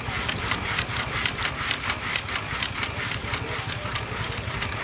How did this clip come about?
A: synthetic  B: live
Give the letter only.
B